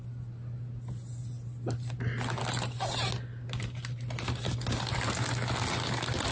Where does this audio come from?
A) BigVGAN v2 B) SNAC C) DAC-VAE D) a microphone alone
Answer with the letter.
D